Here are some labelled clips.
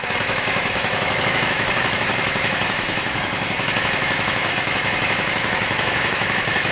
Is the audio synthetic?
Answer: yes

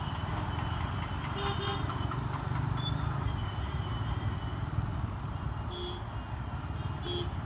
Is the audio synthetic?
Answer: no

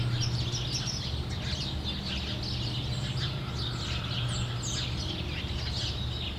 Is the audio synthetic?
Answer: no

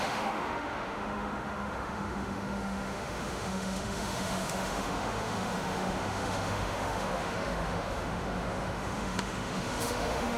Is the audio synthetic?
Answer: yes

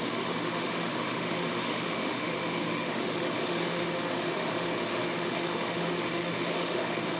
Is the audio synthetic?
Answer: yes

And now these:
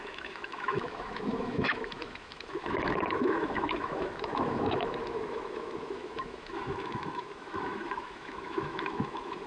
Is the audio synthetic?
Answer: yes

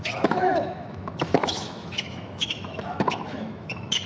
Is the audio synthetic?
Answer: yes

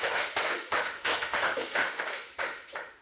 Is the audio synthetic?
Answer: yes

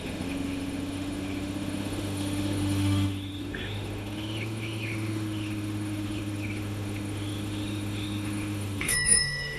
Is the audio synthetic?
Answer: yes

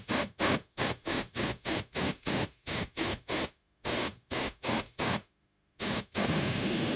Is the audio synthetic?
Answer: yes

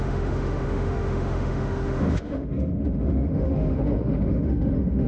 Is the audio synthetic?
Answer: yes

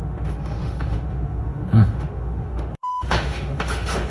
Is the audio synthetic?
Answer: yes